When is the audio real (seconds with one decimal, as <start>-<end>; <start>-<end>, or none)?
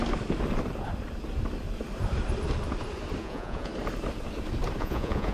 0.0-3.2; 3.7-4.8